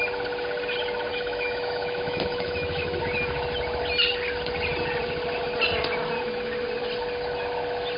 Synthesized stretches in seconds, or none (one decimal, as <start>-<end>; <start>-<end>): 1.1-3.0